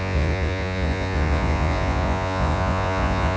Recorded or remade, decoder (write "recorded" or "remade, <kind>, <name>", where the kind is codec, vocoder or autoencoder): remade, vocoder, Vocos